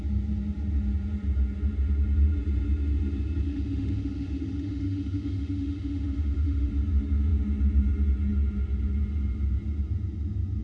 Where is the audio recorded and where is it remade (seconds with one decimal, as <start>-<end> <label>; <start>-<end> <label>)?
0.0-3.5 recorded; 3.5-6.7 remade; 6.7-10.6 recorded